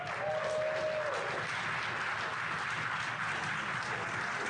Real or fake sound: real